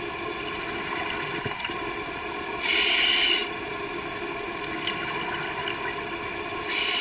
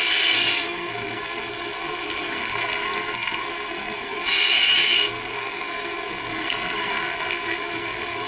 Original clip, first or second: first